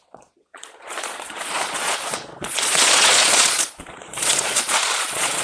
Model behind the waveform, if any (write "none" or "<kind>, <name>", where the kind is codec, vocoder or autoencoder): vocoder, Vocos